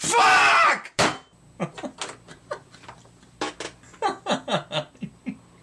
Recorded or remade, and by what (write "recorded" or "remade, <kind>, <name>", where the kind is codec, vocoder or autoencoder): recorded